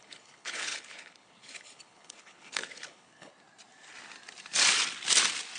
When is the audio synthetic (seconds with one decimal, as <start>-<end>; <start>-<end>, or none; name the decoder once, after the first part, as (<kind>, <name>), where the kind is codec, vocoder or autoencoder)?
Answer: 0.0-3.3 (codec, HILCodec)